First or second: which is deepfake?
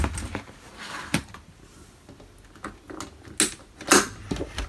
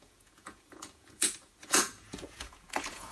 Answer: second